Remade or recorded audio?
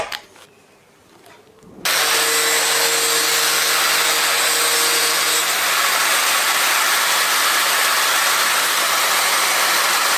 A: recorded